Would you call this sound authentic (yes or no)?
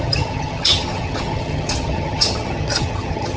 no